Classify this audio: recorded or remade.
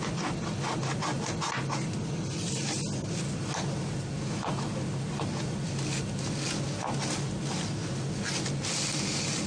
recorded